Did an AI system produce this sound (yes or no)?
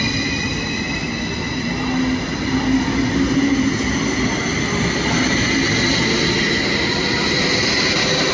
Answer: no